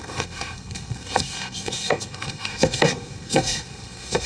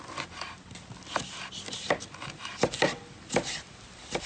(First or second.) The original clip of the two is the second